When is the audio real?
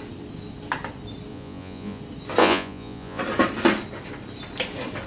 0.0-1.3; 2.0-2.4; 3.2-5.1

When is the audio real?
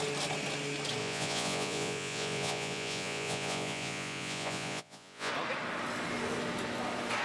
0.0-1.0; 5.3-7.2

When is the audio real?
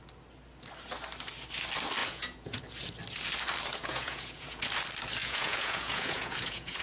0.0-2.0; 2.6-3.7; 4.6-5.2